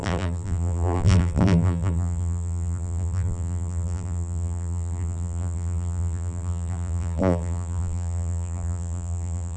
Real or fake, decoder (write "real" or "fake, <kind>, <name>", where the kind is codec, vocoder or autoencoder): fake, vocoder, BigVGAN v2